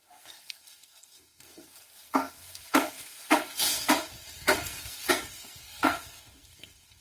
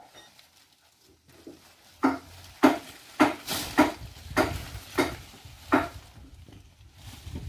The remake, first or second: first